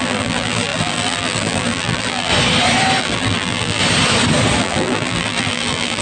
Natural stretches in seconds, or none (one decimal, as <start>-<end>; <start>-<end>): 2.3-3.0; 3.8-4.6